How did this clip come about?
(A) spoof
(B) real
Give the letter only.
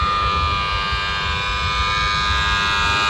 B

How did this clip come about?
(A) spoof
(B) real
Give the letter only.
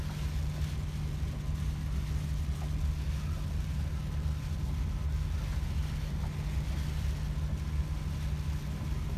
B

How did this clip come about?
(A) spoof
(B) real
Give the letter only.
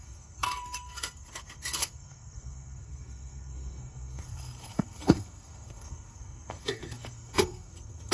A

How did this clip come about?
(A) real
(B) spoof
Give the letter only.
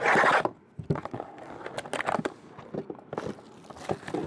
A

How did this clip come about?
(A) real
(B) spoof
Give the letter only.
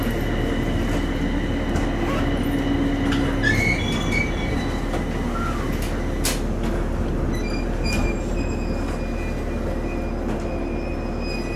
A